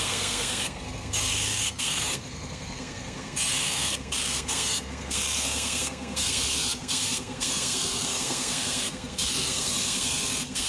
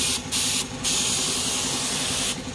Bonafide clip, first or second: second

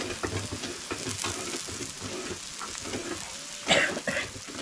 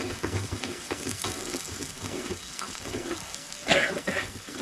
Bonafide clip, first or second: first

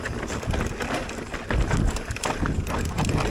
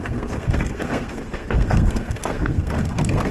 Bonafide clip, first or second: first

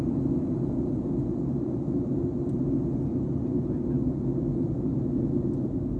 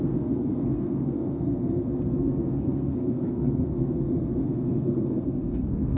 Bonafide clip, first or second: first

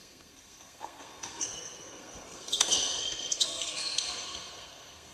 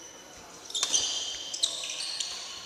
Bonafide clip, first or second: second